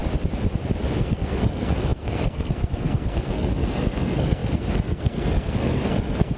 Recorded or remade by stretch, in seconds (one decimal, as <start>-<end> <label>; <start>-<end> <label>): 0.0-1.0 recorded; 1.0-6.4 remade